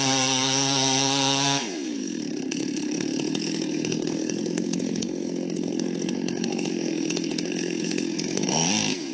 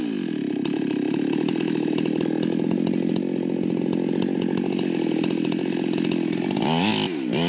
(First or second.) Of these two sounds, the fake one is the first